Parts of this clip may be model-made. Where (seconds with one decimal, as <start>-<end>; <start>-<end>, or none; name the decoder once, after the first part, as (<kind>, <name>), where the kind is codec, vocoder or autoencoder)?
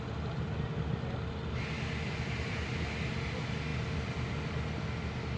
none